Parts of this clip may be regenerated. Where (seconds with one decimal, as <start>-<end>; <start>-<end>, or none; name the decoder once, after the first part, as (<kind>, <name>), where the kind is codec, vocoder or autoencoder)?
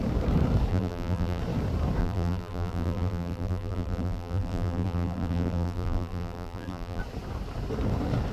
0.7-1.4 (vocoder, BigVGAN v2); 2.0-7.0